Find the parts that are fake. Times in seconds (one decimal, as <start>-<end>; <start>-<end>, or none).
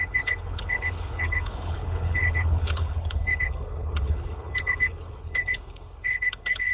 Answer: 0.0-6.7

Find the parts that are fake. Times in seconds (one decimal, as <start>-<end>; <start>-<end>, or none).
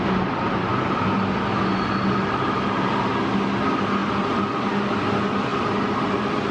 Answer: none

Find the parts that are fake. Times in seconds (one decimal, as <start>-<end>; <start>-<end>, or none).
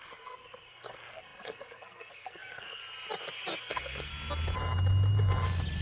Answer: 0.0-2.8; 3.6-4.1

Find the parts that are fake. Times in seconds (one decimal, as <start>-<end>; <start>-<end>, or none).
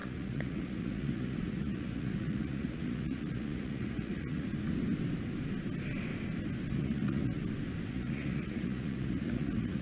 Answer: 0.0-4.5; 6.7-7.4; 7.9-9.8